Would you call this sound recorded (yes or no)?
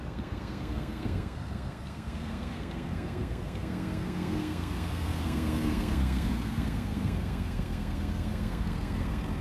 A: no